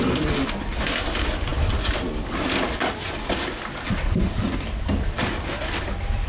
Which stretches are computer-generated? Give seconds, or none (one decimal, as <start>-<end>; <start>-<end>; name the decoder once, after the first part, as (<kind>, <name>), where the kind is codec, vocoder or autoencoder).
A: none